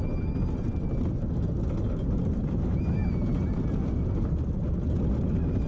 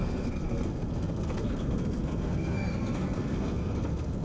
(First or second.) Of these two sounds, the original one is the first